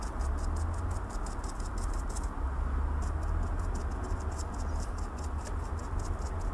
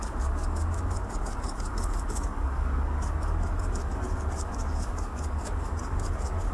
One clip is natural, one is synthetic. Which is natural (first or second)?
first